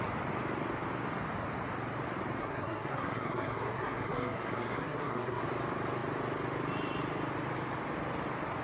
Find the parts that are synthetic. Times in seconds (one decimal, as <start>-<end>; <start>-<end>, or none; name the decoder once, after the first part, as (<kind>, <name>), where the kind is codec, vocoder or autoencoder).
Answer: 2.4-5.4 (codec, SNAC)